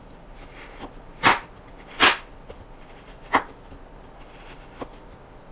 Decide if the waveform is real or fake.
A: real